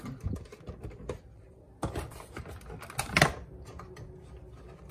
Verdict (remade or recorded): recorded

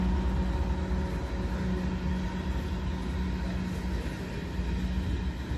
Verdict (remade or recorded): recorded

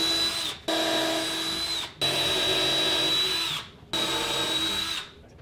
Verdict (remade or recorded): recorded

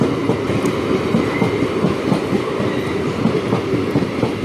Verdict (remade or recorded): recorded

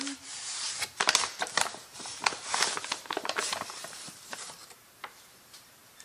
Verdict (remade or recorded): remade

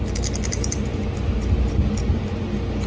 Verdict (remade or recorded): recorded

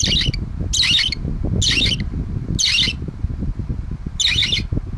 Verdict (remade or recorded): recorded